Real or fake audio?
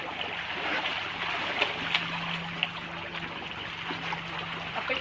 real